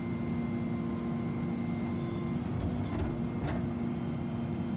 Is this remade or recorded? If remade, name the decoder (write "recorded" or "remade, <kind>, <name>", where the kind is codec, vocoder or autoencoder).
recorded